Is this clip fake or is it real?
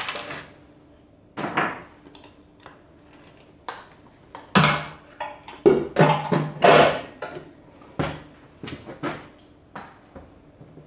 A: real